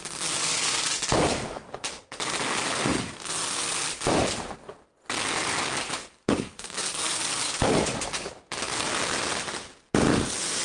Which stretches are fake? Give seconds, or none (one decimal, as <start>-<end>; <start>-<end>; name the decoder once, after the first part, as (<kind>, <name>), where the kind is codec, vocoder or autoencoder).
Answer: 0.4-3.6 (codec, DAC); 5.4-8.9